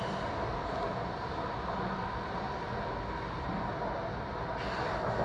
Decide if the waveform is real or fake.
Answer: real